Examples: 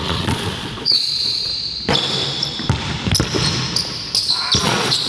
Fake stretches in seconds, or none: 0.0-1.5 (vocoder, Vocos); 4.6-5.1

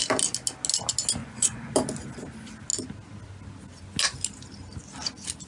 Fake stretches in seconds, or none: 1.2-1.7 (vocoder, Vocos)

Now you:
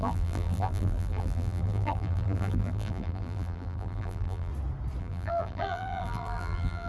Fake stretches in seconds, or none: 0.0-4.5 (vocoder, BigVGAN v2); 5.0-6.9